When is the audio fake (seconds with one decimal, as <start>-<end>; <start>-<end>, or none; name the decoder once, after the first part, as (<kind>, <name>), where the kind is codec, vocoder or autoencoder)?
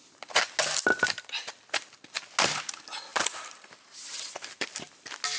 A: 0.9-1.7 (vocoder, BigVGAN v2); 3.1-4.7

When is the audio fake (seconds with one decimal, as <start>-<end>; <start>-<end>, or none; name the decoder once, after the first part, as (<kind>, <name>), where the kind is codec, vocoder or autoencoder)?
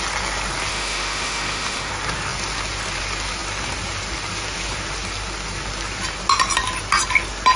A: 0.7-1.9 (autoencoder, DAC-VAE)